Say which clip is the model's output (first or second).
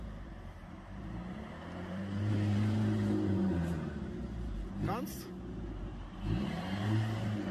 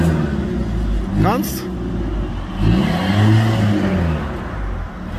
first